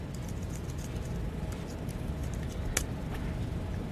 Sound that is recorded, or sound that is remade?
recorded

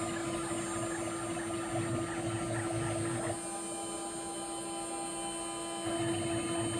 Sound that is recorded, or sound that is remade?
recorded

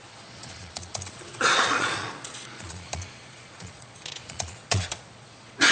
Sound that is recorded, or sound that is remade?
remade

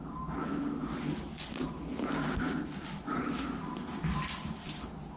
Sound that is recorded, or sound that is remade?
recorded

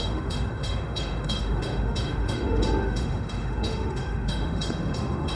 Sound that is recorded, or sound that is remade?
remade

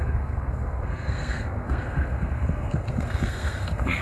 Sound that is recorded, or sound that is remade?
remade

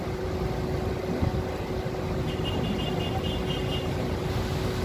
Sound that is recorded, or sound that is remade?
recorded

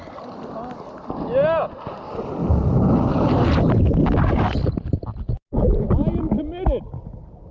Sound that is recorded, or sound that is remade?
recorded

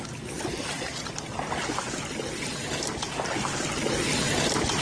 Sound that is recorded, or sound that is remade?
recorded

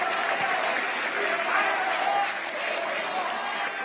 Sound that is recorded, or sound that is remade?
recorded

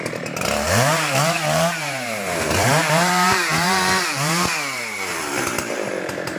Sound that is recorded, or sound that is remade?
remade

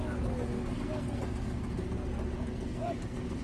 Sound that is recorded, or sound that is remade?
remade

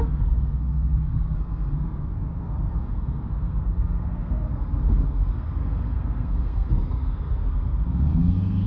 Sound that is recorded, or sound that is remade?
remade